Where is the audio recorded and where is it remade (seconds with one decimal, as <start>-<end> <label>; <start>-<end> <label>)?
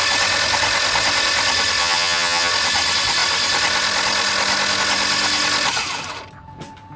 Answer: 0.0-1.8 recorded; 1.8-2.5 remade; 2.5-7.0 recorded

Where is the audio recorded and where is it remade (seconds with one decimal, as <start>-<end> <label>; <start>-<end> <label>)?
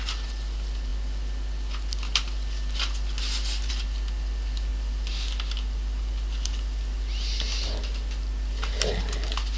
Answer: 0.0-9.6 recorded